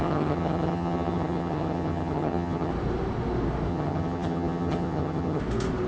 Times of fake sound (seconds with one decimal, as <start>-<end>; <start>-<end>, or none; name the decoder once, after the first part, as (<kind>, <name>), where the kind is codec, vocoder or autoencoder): 0.0-2.7 (vocoder, HiFi-GAN); 3.7-5.4

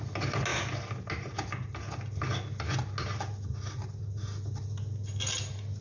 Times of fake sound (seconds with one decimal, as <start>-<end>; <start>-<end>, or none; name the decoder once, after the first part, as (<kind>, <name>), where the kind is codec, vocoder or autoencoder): none

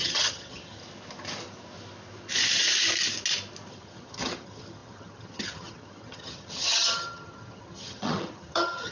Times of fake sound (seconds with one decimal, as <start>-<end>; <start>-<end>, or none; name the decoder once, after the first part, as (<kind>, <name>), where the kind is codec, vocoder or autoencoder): 0.0-0.8 (vocoder, HiFi-GAN); 3.7-8.9

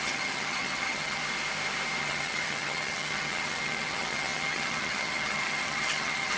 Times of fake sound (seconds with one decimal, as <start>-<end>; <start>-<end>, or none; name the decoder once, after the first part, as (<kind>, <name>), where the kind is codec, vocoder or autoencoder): 0.0-1.2 (vocoder, HiFi-GAN); 2.0-6.4